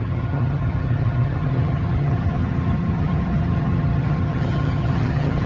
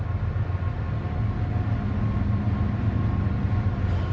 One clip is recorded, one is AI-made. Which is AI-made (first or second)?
first